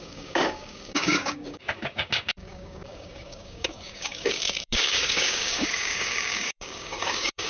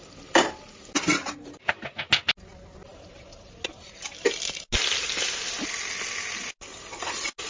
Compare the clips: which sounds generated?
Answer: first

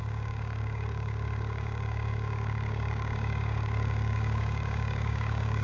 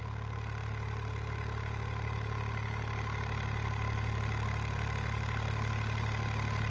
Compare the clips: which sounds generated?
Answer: first